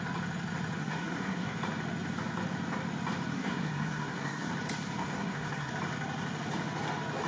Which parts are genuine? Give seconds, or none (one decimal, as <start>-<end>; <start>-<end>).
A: 0.0-0.8; 1.6-3.3; 4.5-5.0; 5.7-7.3

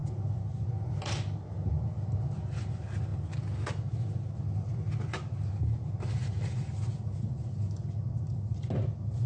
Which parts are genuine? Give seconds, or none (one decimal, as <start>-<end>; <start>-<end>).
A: 0.0-9.3